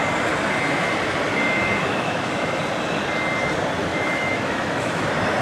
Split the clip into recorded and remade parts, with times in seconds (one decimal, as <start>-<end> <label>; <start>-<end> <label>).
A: 0.0-1.8 recorded; 1.8-2.6 remade; 2.6-3.9 recorded; 3.9-5.0 remade; 5.0-5.4 recorded